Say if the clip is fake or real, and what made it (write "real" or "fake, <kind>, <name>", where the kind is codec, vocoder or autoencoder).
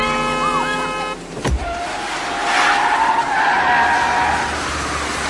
real